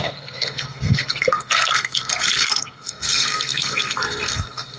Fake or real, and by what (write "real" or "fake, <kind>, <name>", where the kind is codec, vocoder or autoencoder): fake, codec, SNAC